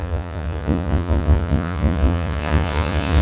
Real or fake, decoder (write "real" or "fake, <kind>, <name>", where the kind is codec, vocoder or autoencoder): fake, vocoder, Vocos